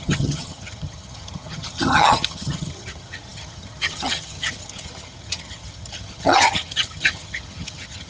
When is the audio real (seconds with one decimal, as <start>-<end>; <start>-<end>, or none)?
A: none